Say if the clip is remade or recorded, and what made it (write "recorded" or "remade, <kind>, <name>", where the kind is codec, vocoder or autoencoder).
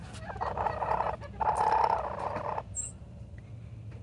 recorded